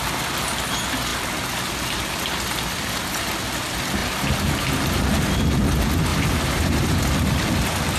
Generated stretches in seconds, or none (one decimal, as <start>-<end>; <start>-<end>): 6.1-7.0